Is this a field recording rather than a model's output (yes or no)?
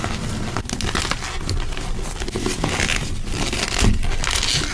yes